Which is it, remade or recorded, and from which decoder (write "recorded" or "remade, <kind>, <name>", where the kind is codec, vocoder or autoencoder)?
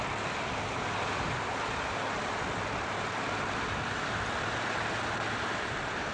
recorded